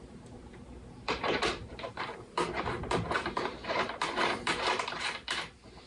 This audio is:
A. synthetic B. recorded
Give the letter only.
A